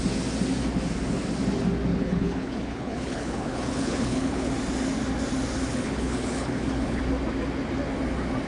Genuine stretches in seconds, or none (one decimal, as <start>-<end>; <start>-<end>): 0.0-1.9; 4.5-5.7; 7.0-8.5